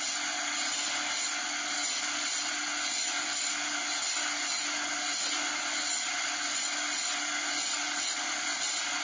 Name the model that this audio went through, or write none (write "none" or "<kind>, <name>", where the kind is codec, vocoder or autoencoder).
none